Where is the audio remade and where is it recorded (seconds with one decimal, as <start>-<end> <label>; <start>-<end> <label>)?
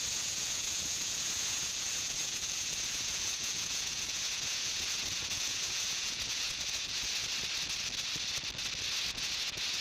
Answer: 0.0-7.2 remade; 7.2-9.1 recorded; 9.1-9.8 remade